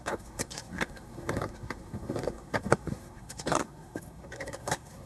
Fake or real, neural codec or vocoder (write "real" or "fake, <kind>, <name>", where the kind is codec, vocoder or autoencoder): fake, codec, SNAC